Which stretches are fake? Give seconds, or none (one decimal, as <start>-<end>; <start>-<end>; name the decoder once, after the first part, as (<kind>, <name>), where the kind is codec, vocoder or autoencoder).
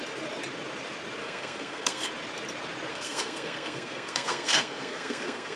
1.2-2.1 (codec, SNAC); 2.9-5.6